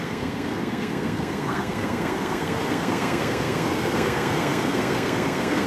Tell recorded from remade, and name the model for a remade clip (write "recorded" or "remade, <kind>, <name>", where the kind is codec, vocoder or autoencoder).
remade, codec, SNAC